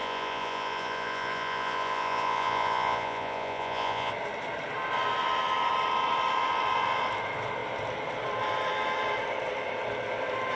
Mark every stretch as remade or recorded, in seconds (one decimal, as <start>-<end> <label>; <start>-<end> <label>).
0.0-4.1 remade; 4.1-10.6 recorded